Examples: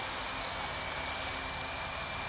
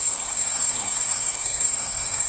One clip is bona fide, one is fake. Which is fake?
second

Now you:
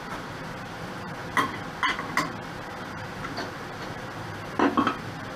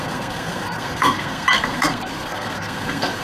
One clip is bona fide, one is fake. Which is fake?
second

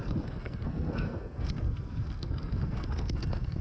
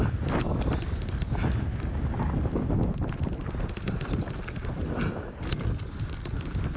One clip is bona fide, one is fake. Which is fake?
first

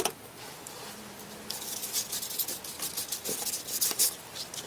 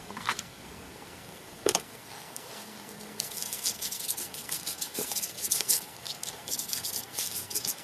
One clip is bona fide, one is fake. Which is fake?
second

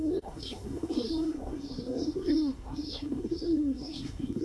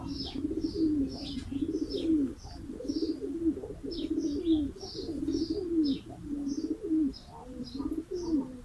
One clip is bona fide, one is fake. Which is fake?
first